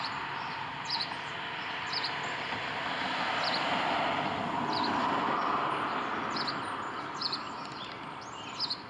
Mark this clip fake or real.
real